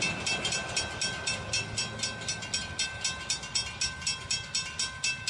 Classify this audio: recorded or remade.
recorded